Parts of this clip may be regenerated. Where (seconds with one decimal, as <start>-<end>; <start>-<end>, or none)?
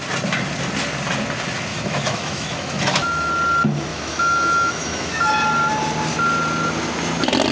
1.7-3.3; 3.9-5.3